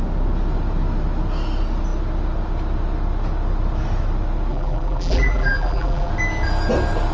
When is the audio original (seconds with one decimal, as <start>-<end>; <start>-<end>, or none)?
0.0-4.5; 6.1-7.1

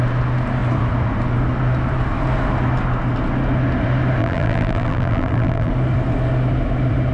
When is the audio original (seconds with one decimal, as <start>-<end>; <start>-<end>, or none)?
0.0-4.2; 5.7-7.1

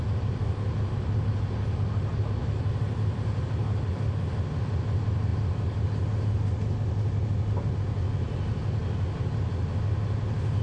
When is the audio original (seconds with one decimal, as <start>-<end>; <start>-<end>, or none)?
0.0-2.4; 3.5-10.6

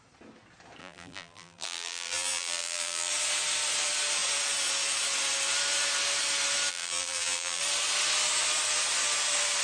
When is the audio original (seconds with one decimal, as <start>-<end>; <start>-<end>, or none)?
0.0-0.8; 3.1-6.7; 7.6-9.6